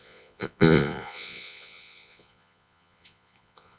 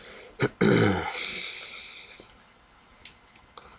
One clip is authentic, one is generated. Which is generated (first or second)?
first